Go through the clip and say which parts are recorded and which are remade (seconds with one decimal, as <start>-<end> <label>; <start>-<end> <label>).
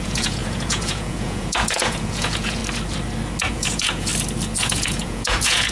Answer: 0.0-2.6 remade; 2.6-3.5 recorded; 3.5-4.1 remade; 4.1-4.6 recorded; 4.6-5.7 remade